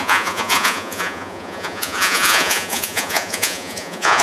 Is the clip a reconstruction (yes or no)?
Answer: yes